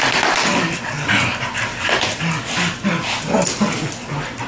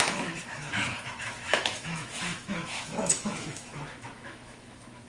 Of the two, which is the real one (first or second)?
first